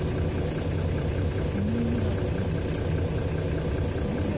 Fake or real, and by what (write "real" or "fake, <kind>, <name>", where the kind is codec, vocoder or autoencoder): real